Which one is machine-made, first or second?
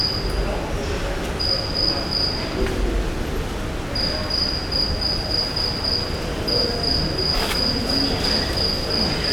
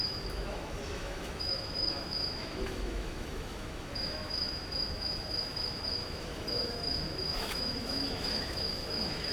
second